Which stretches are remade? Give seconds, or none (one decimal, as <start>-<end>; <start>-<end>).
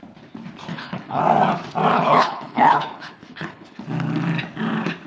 0.7-1.2; 1.9-3.8